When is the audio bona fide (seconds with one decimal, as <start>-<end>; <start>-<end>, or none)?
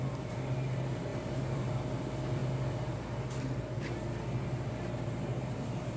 0.0-1.1; 1.7-6.0